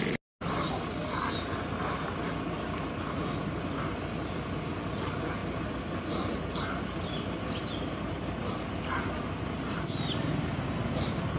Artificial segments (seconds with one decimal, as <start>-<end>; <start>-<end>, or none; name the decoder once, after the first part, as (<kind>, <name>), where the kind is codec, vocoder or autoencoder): none